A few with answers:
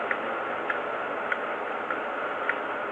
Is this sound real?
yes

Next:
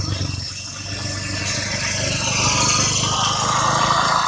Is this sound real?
yes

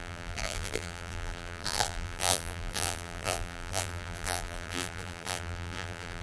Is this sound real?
no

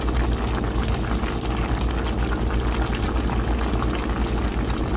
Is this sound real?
yes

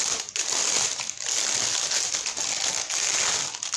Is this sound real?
yes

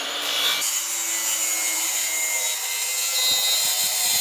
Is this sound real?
yes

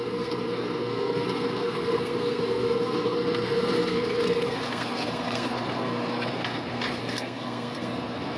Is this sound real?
no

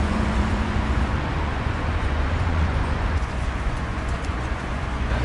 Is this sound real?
no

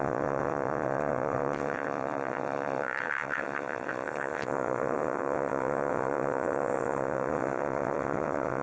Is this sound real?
no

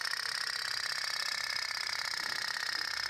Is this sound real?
yes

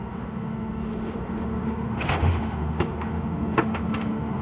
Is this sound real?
no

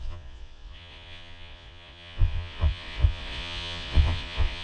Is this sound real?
no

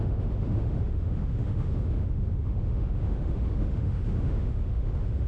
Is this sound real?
no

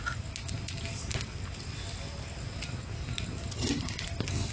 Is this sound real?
yes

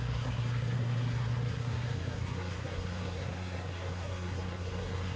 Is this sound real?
no